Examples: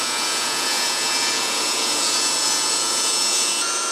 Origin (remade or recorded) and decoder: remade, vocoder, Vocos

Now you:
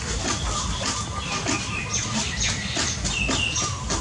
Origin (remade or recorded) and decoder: recorded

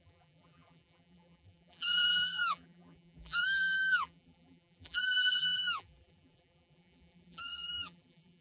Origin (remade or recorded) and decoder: remade, vocoder, BigVGAN v2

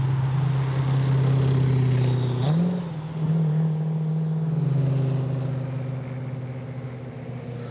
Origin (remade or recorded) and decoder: recorded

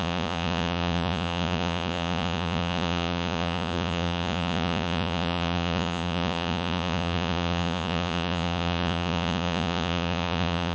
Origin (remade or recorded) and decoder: remade, vocoder, Vocos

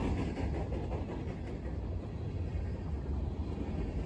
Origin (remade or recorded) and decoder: recorded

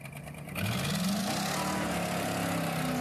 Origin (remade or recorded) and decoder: recorded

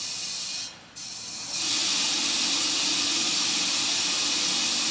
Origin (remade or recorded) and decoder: recorded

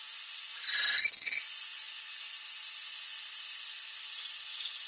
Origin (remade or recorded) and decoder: recorded